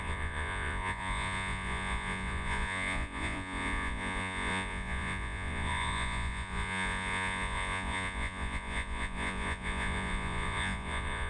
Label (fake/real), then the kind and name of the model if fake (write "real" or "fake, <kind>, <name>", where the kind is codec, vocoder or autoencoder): fake, vocoder, Vocos